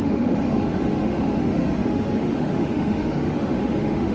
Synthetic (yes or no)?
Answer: yes